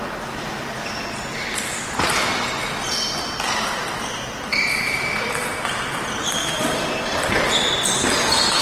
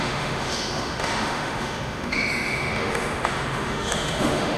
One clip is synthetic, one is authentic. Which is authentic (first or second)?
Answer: first